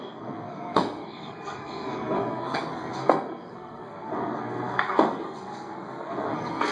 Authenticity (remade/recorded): remade